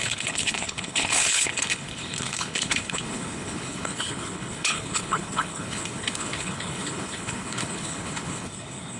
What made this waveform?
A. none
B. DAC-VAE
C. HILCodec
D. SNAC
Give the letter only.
C